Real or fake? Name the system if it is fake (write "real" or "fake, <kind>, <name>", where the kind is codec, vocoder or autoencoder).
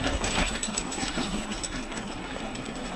fake, codec, SNAC